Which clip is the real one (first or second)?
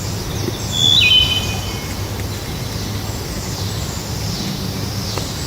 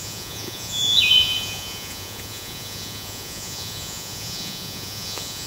first